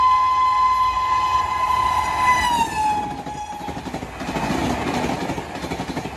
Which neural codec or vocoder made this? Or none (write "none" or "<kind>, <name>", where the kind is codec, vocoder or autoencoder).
none